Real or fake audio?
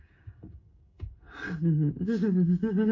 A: fake